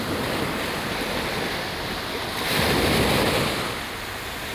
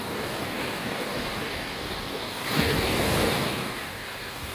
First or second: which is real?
first